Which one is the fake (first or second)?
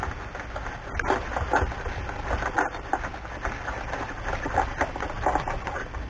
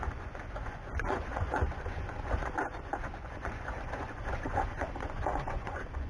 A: second